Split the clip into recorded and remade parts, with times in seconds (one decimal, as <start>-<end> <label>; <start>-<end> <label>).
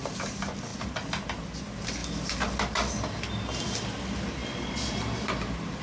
0.0-0.7 recorded; 0.7-1.4 remade; 1.4-2.0 recorded; 2.0-2.9 remade; 2.9-4.4 recorded; 4.4-5.3 remade; 5.3-5.8 recorded